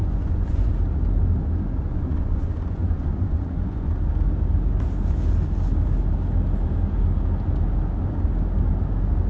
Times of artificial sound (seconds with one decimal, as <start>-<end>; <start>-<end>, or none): 0.0-0.7; 1.9-3.9